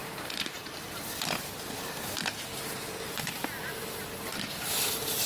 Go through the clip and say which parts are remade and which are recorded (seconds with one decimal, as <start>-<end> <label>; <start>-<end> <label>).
0.0-0.9 remade; 0.9-5.3 recorded